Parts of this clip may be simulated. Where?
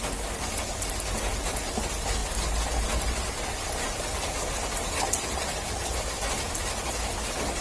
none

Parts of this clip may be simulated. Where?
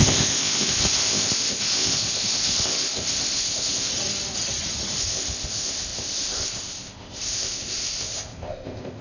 0.0-3.9 (codec, ZipCodec); 5.0-9.0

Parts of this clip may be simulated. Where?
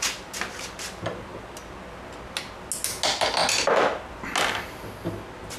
none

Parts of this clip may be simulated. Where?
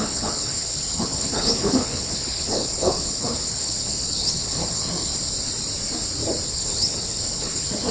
0.0-5.1 (codec, HILCodec); 6.5-7.9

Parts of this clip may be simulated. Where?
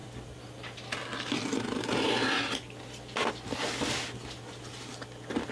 none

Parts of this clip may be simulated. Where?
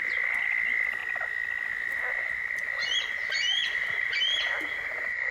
none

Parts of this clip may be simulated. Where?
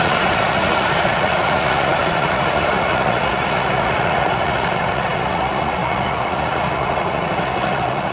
0.0-8.1 (vocoder, Vocos)